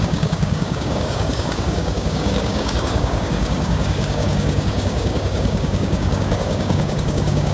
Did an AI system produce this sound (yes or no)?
yes